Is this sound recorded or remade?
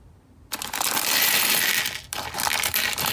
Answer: recorded